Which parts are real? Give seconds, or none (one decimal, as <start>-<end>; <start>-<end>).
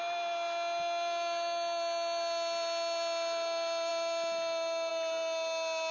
0.0-5.9